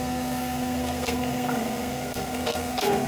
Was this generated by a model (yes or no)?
yes